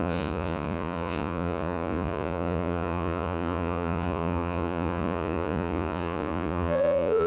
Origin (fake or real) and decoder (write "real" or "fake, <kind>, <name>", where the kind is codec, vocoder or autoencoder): fake, vocoder, Vocos